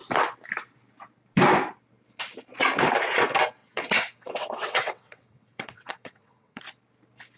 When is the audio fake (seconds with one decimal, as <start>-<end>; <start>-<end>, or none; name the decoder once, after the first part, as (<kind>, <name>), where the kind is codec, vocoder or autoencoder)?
3.6-6.6 (vocoder, WaveNeXt)